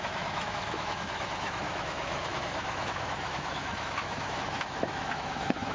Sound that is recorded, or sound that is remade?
remade